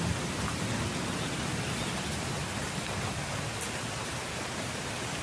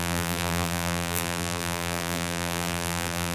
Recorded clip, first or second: first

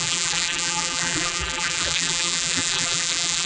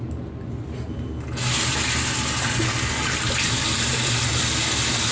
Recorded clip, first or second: second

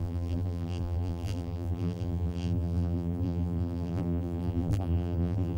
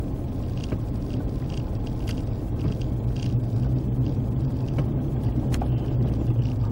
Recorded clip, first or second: second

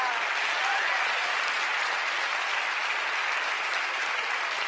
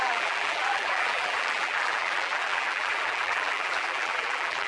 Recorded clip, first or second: first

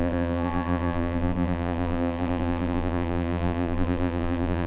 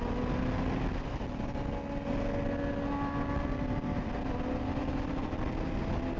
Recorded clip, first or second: second